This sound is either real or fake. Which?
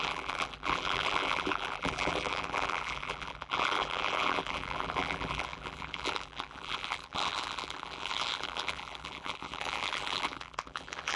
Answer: fake